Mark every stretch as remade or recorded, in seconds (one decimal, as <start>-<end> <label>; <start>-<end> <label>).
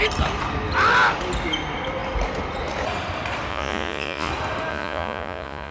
0.0-3.5 recorded; 3.5-4.3 remade; 4.3-4.7 recorded; 4.7-5.7 remade